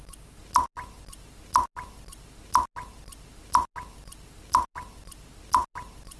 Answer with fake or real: real